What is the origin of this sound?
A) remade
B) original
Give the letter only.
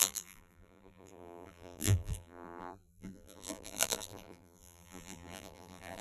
A